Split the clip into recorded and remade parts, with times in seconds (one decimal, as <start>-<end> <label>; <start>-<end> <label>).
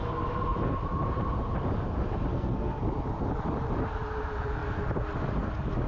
0.0-2.3 recorded; 2.3-2.8 remade; 2.8-5.9 recorded